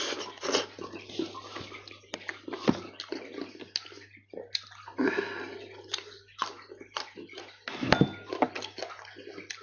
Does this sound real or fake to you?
real